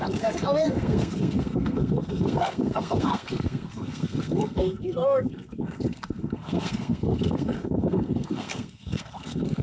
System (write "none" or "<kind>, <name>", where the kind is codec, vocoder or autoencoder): codec, SNAC